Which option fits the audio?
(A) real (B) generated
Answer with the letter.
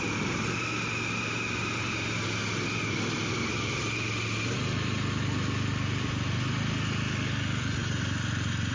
A